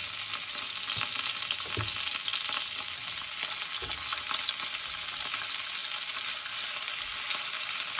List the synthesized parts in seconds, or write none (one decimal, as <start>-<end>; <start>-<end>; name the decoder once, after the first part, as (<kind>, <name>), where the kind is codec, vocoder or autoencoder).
none